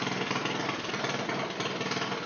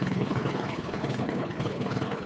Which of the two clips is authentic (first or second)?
first